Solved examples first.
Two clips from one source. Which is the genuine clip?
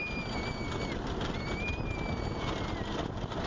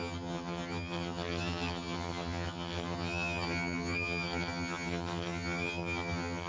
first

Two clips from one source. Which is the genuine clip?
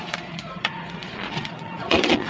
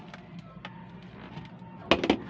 second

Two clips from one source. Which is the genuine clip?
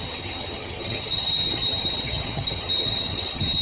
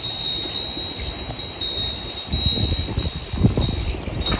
second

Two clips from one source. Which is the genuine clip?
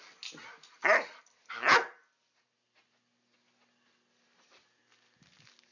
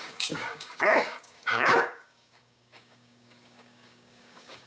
first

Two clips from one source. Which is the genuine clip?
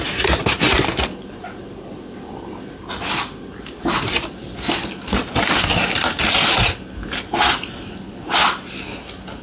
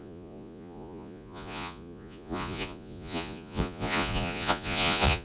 first